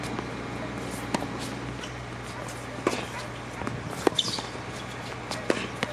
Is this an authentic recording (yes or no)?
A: yes